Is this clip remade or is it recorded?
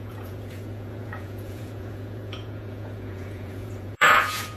remade